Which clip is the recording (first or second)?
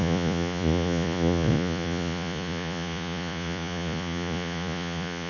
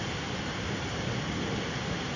second